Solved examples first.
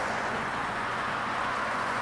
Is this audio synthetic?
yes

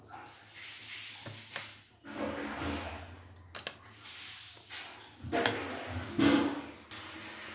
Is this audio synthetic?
no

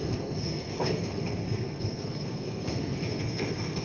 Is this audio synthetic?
yes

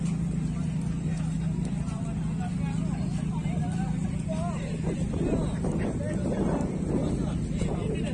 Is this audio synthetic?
no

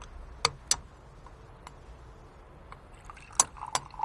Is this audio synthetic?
no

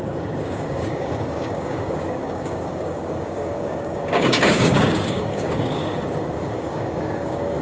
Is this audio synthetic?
yes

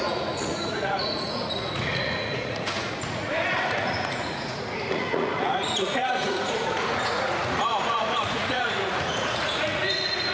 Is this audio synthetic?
yes